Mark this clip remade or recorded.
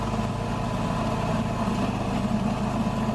recorded